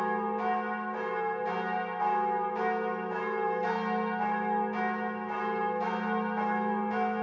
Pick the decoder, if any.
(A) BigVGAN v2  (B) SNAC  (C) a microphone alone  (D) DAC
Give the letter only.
C